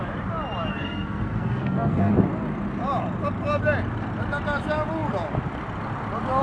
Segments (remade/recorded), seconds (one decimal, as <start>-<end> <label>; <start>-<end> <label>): 0.0-0.7 recorded; 0.7-2.1 remade; 2.1-6.4 recorded

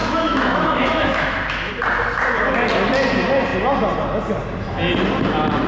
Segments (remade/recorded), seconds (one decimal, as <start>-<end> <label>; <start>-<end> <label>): 0.0-1.7 remade; 1.7-5.7 recorded